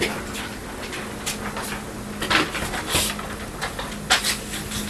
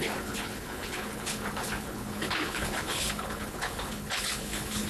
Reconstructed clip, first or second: second